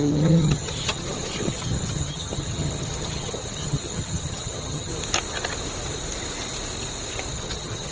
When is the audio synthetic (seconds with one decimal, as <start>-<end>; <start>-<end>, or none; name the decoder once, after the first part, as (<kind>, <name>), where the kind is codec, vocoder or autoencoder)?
0.0-4.9 (vocoder, HiFi-GAN); 7.3-7.9